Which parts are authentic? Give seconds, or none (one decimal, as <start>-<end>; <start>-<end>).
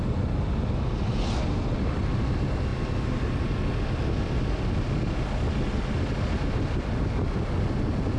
0.0-8.2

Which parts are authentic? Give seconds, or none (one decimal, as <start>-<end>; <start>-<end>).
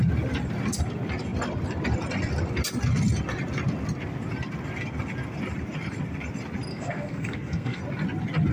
0.0-6.7; 7.8-8.5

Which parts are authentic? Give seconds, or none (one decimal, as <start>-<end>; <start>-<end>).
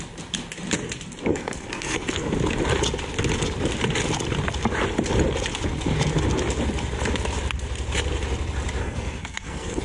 0.0-1.3; 2.3-8.8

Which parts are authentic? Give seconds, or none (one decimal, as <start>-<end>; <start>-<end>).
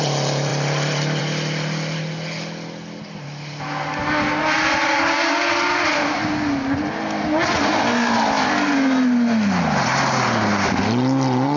0.0-11.6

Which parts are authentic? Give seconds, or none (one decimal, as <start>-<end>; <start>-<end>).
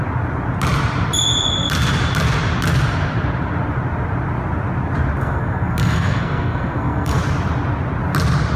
0.0-5.2; 7.2-8.6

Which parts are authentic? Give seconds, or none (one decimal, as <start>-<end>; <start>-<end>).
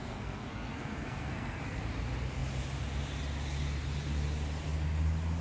1.8-5.4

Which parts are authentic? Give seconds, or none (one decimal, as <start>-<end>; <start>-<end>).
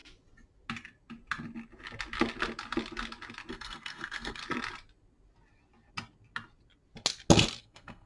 0.0-3.5; 4.4-7.6